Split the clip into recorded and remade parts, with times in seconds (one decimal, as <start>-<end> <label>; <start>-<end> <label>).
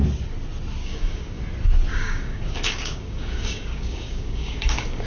0.0-0.8 recorded; 0.8-1.4 remade; 1.4-1.9 recorded; 1.9-5.1 remade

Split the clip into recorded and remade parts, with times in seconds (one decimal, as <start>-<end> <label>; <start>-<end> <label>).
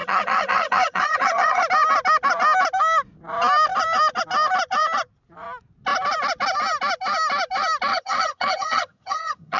0.0-1.6 remade; 1.6-7.9 recorded; 7.9-9.6 remade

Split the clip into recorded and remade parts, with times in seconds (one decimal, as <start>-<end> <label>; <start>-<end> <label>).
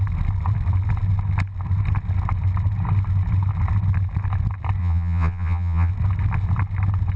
0.0-4.8 recorded; 4.8-5.9 remade; 5.9-7.2 recorded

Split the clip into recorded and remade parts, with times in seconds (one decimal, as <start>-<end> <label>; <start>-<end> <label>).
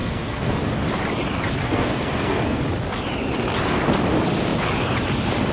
0.0-0.6 remade; 0.6-1.6 recorded; 1.6-2.6 remade; 2.6-5.5 recorded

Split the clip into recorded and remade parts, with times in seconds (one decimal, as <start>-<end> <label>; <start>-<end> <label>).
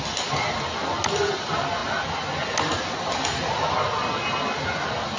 0.0-5.2 recorded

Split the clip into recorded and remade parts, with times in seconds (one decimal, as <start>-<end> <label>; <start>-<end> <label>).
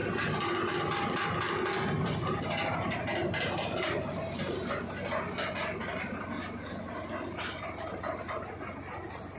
0.0-9.4 recorded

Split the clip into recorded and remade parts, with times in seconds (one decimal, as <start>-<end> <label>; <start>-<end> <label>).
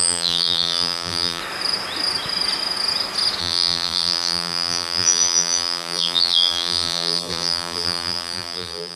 0.0-1.4 remade; 1.4-3.4 recorded; 3.4-9.0 remade